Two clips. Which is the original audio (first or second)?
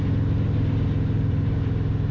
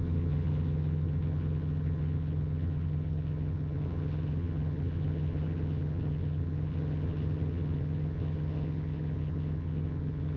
first